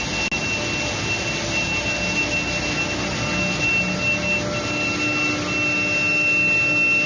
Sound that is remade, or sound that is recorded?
recorded